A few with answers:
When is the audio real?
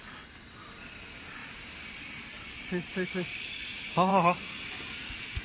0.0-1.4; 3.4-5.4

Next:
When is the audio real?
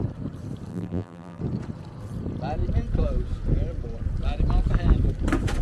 0.0-0.7; 1.4-5.6